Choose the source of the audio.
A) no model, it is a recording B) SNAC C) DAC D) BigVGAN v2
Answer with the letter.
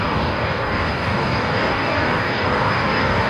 C